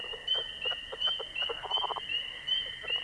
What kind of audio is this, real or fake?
fake